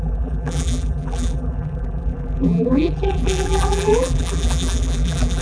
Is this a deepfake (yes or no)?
yes